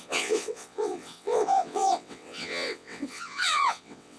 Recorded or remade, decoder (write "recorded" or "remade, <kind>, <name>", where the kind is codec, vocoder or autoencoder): remade, vocoder, WaveNeXt